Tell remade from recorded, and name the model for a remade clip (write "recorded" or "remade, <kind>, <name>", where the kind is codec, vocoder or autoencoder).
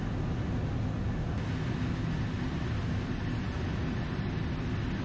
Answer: recorded